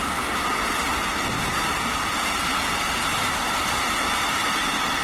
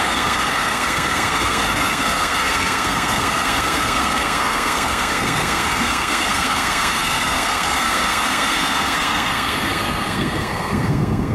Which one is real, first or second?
first